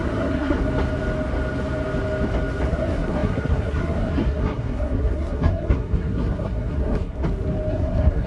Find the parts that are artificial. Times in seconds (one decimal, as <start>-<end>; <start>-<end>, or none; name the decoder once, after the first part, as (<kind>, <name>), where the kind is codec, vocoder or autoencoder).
0.0-0.6 (codec, SNAC); 2.7-7.2; 7.7-8.3